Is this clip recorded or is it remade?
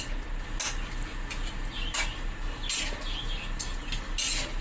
recorded